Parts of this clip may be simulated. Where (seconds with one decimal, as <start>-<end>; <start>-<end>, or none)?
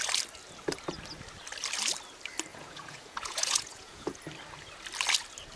2.5-4.2